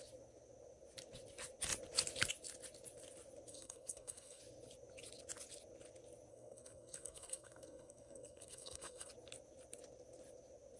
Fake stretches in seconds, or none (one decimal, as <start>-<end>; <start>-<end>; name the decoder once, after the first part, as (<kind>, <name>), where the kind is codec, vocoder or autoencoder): 3.5-4.4 (codec, SNAC); 6.3-9.1